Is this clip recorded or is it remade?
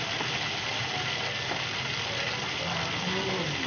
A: recorded